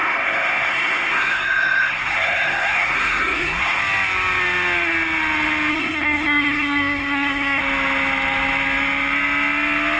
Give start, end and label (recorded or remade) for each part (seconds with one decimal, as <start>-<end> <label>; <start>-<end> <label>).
0.0-3.8 remade; 3.8-5.7 recorded; 5.7-7.6 remade; 7.6-10.0 recorded